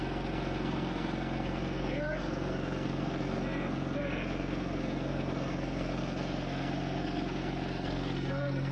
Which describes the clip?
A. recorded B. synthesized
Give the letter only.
B